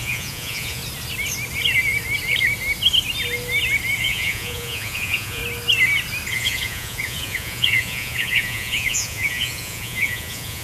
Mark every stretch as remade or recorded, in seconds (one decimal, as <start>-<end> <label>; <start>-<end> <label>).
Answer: 0.0-0.8 remade; 0.8-4.0 recorded; 4.0-5.4 remade; 5.4-6.3 recorded; 6.3-10.6 remade